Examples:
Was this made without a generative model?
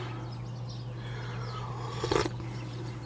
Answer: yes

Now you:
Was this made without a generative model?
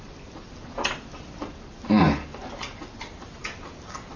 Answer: yes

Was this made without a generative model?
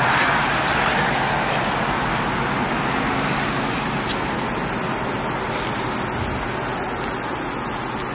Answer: yes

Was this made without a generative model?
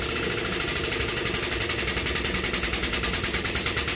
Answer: yes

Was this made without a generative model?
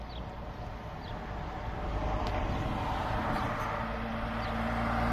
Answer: yes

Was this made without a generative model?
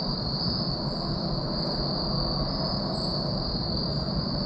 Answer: yes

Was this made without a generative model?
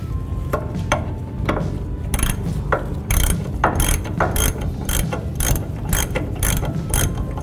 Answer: no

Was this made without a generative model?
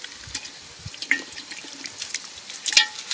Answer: yes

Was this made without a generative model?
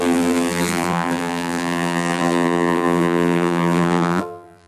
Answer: no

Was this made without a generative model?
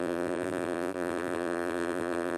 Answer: no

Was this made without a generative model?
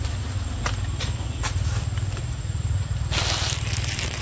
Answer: yes